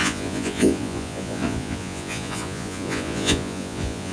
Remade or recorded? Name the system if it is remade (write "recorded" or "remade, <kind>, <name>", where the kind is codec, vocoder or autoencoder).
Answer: remade, vocoder, Vocos